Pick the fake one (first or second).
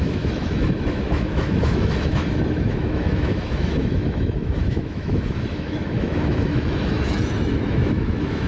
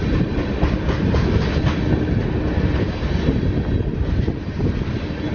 first